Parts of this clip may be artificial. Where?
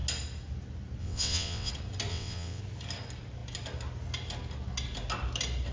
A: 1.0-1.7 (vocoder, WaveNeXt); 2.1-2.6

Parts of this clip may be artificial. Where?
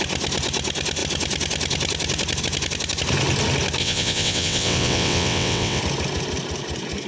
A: 3.8-5.8 (vocoder, WaveNeXt)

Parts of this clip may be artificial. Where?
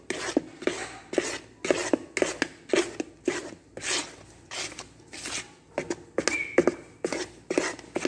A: none